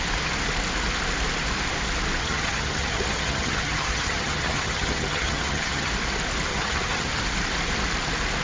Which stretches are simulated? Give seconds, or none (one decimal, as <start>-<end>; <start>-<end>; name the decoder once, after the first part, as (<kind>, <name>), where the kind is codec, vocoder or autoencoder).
2.2-5.9 (vocoder, HiFi-GAN); 6.5-7.2